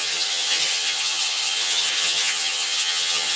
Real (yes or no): no